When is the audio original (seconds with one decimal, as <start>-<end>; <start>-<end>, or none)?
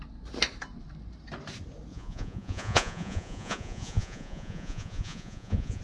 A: 0.0-1.9